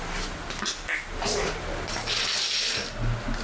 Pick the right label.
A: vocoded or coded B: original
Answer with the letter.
B